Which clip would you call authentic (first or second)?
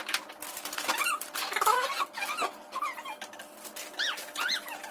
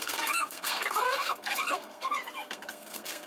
first